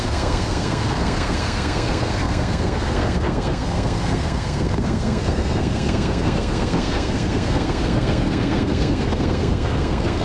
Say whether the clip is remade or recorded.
remade